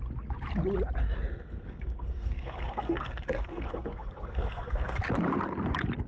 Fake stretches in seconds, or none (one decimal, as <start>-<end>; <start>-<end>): 1.3-5.0